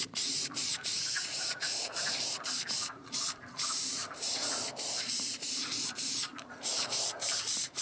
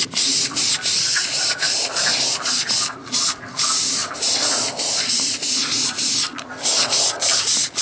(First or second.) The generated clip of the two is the first